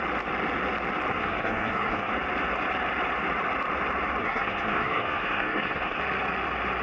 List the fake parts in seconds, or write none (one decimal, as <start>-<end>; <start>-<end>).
1.1-2.1; 4.2-6.0

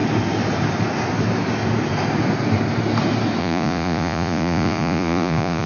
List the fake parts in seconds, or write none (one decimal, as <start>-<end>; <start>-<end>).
3.4-5.7